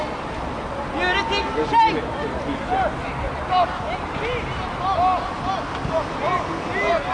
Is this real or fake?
real